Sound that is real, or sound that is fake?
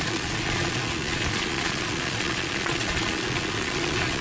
fake